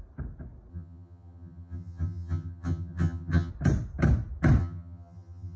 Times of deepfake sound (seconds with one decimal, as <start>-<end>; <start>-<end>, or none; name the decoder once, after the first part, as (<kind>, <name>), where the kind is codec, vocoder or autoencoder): 0.7-3.5 (vocoder, HiFi-GAN); 4.6-5.6